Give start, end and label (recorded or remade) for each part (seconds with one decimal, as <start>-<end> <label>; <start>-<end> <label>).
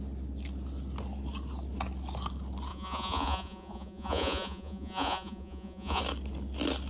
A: 0.0-2.7 recorded; 2.7-6.0 remade; 6.0-6.9 recorded